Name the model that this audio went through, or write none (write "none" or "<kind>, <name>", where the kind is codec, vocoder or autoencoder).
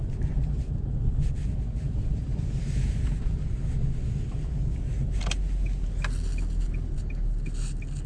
none